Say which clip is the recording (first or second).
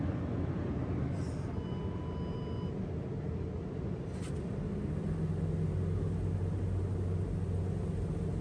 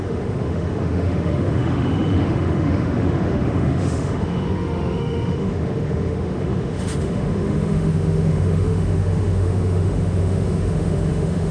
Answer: first